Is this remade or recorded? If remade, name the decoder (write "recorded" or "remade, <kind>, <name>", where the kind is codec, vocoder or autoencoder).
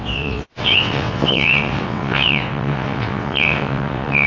remade, vocoder, WaveNeXt